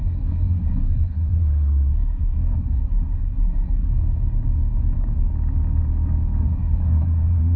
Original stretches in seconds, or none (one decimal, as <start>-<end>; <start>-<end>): 3.9-6.4